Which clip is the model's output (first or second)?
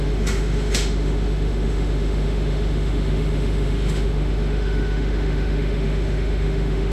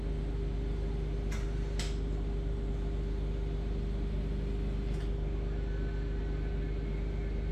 first